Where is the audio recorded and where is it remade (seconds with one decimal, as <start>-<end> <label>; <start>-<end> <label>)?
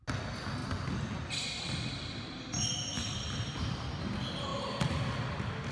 0.0-5.7 recorded